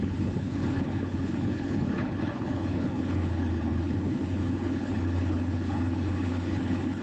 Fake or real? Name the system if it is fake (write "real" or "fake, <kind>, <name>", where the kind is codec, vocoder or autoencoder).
fake, codec, HILCodec